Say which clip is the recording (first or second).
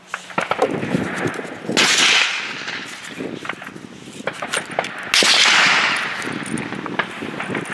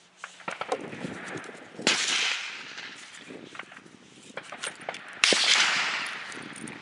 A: first